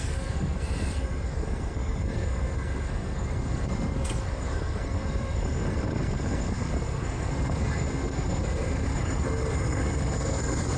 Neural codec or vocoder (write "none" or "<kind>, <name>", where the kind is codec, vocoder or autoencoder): codec, SNAC